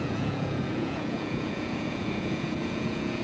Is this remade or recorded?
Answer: remade